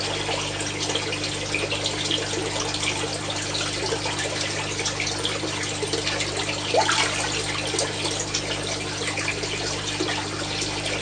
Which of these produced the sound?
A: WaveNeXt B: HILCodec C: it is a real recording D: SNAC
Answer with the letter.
C